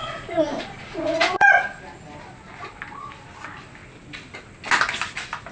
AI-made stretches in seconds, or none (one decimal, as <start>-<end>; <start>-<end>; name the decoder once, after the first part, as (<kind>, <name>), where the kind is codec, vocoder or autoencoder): 0.0-1.5 (vocoder, Vocos)

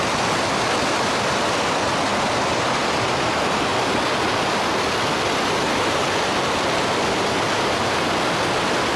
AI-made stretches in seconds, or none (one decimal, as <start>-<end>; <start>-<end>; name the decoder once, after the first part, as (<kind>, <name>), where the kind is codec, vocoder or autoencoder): none

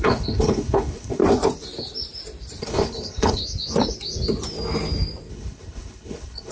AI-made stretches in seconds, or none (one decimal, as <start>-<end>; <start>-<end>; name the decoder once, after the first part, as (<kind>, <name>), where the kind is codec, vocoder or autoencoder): 0.0-1.2 (codec, HILCodec); 2.6-3.4; 5.3-6.5

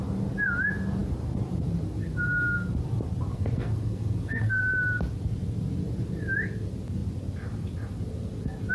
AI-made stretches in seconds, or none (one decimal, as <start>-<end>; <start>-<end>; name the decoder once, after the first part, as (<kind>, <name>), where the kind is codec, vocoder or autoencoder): 3.3-4.6 (codec, SNAC)

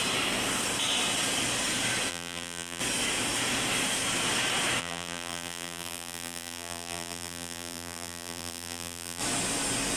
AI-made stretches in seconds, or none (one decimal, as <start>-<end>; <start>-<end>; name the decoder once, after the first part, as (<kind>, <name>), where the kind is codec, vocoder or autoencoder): 2.1-2.8 (vocoder, BigVGAN v2); 4.8-9.2